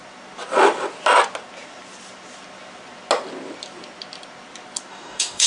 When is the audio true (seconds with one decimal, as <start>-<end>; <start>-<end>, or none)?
0.0-4.9